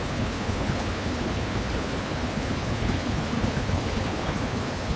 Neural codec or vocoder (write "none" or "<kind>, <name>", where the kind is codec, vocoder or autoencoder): codec, HILCodec